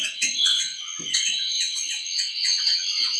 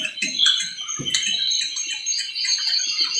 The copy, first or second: first